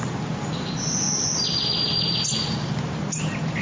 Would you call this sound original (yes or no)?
yes